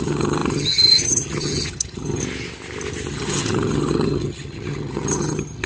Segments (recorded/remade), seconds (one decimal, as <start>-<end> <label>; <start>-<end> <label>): 0.0-2.2 remade; 2.2-3.1 recorded; 3.1-5.7 remade